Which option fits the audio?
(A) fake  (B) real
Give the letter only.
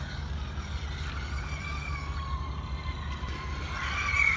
B